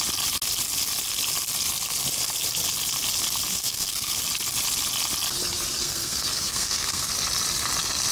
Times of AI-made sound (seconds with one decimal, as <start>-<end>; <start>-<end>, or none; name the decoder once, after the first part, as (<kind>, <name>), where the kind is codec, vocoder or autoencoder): 3.5-4.2 (codec, SNAC); 5.8-7.1